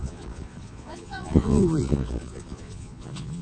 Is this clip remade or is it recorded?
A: remade